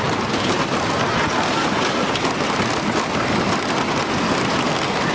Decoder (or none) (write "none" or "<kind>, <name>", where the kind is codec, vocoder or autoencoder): none